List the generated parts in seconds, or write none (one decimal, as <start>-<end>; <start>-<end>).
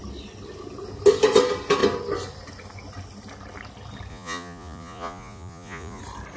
4.1-6.0